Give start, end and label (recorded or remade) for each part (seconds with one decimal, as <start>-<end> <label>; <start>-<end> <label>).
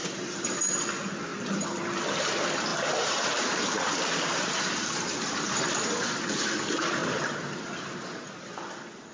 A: 0.0-0.8 remade; 0.8-2.7 recorded; 2.7-6.1 remade; 6.1-9.1 recorded